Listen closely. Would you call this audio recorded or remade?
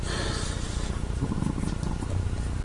recorded